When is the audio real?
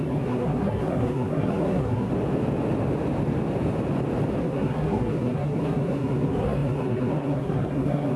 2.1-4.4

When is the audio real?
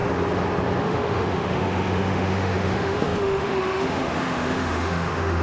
0.0-0.8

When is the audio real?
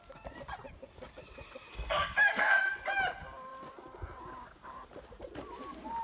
0.0-1.7; 2.6-6.0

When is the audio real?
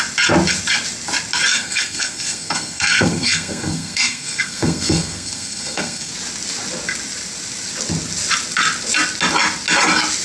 0.0-1.5; 6.1-10.2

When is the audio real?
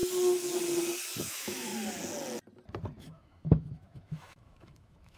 0.0-1.2; 1.7-3.0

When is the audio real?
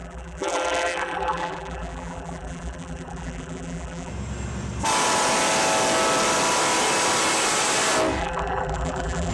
4.1-8.2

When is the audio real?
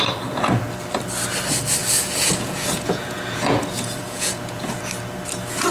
0.0-1.8; 4.8-5.7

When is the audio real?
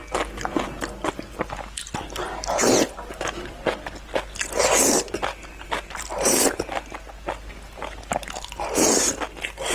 0.0-9.7